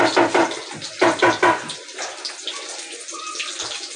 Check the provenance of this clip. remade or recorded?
recorded